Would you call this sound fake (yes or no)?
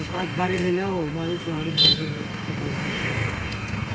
yes